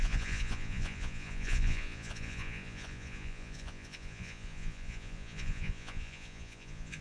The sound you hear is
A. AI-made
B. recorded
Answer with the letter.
A